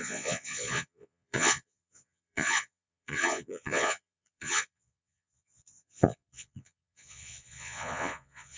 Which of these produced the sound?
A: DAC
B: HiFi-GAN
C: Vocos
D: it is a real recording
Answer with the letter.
C